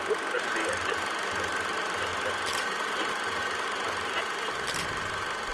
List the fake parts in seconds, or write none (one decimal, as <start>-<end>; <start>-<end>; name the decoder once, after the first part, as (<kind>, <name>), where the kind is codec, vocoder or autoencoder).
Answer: none